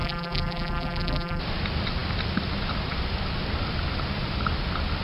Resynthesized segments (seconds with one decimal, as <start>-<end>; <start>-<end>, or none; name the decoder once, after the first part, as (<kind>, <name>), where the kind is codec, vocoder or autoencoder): 0.0-1.4 (vocoder, BigVGAN v2)